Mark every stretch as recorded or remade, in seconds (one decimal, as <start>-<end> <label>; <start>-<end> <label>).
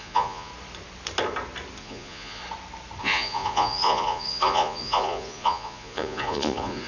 0.0-0.5 remade; 0.5-1.8 recorded; 1.8-2.4 remade; 2.4-3.0 recorded; 3.0-6.9 remade